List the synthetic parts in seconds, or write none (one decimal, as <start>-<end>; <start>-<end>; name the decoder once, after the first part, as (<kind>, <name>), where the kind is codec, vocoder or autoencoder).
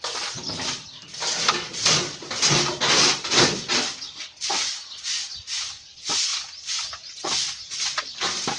none